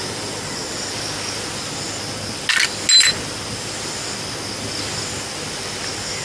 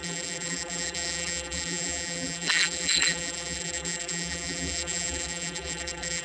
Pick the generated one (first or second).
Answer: second